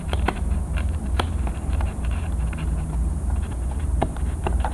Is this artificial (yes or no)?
yes